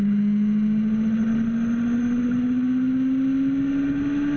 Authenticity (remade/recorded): recorded